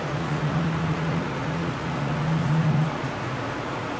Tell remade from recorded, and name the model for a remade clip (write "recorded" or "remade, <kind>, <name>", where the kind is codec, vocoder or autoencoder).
remade, vocoder, Vocos